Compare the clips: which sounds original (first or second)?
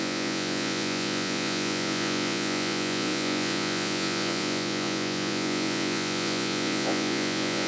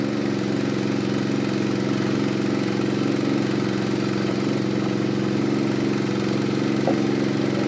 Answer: second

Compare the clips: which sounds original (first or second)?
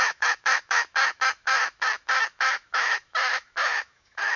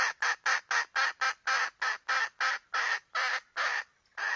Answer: second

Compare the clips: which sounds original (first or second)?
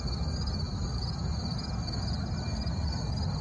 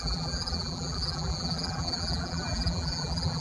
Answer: first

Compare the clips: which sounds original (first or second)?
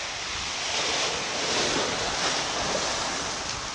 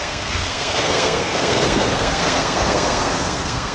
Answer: first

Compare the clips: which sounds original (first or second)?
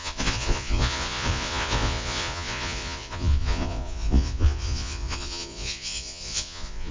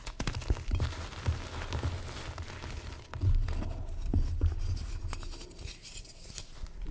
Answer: second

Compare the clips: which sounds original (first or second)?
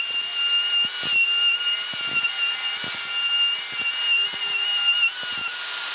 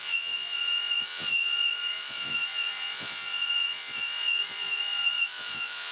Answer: first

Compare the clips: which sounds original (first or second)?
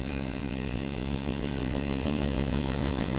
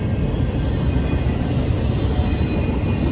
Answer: second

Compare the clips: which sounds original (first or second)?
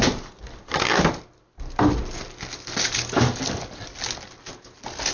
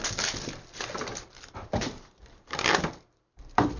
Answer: first